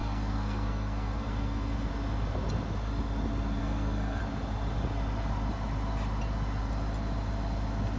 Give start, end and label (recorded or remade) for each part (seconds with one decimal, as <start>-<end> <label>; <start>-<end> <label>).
0.0-1.9 remade; 1.9-3.6 recorded; 3.6-4.2 remade; 4.2-8.0 recorded